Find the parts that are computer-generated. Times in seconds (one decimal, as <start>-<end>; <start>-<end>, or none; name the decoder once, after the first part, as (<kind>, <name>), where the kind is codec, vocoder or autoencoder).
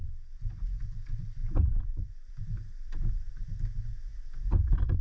1.4-3.3 (vocoder, BigVGAN v2)